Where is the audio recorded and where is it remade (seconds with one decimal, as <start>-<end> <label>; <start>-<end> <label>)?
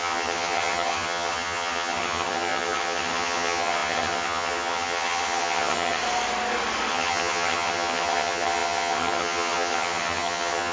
0.0-6.0 remade; 6.0-6.9 recorded; 6.9-10.7 remade